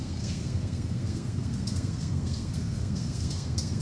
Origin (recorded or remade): remade